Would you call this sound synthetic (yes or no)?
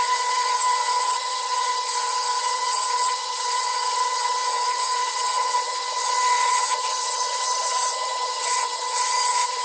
yes